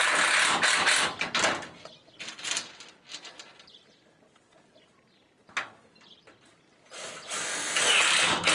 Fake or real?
real